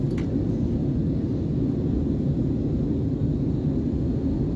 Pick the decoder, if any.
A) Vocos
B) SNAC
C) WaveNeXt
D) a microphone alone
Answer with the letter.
D